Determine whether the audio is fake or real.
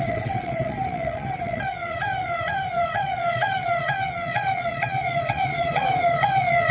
fake